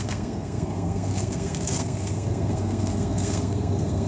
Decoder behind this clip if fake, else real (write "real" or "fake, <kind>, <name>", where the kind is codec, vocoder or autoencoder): fake, codec, SNAC